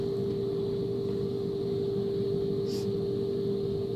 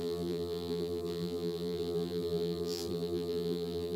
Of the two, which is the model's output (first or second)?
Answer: second